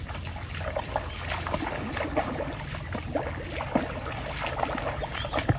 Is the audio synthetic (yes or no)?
no